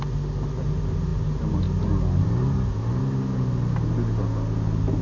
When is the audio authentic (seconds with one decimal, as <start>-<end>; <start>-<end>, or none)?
0.0-5.0